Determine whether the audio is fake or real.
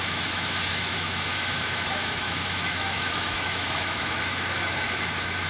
fake